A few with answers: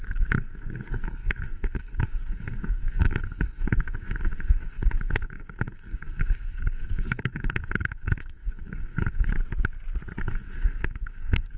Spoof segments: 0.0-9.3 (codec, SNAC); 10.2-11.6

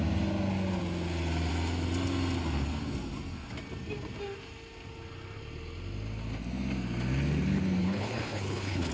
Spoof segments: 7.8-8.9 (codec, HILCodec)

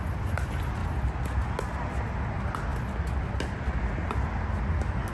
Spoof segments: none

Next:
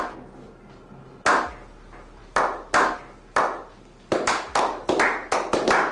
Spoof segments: none

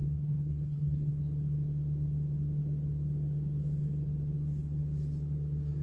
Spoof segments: 0.0-1.2 (codec, HILCodec)